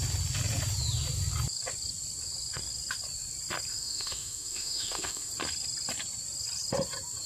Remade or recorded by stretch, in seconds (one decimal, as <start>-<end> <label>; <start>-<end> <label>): 0.0-3.7 recorded; 3.7-5.3 remade; 5.3-7.3 recorded